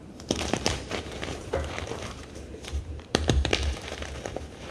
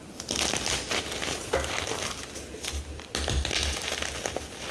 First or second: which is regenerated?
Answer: first